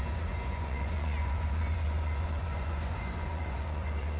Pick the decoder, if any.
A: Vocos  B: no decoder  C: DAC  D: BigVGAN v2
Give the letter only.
A